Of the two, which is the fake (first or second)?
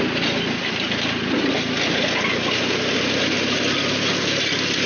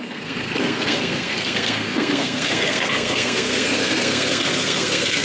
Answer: second